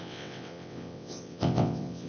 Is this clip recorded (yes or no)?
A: no